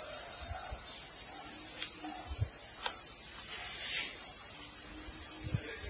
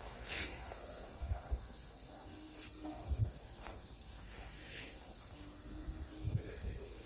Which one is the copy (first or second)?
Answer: second